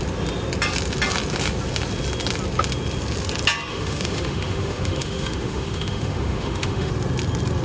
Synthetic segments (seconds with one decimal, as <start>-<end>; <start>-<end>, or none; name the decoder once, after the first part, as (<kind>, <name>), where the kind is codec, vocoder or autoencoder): 3.7-6.9 (autoencoder, DAC-VAE)